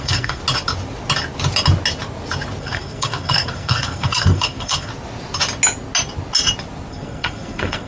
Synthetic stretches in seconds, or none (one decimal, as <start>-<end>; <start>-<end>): 0.0-0.4; 2.6-4.9; 6.9-7.9